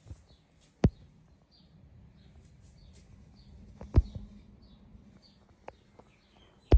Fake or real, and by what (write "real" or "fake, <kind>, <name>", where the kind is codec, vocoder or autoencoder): real